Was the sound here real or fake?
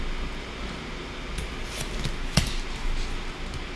real